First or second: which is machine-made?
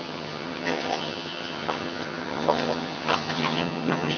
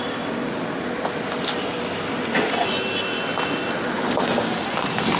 first